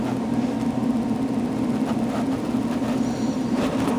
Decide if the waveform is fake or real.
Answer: real